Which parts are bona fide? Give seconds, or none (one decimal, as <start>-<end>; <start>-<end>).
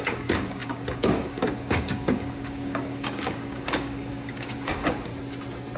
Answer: 5.1-5.8